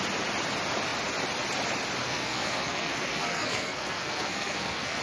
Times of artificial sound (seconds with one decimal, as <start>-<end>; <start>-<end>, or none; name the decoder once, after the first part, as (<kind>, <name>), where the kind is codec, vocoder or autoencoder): 2.0-5.0 (codec, SNAC)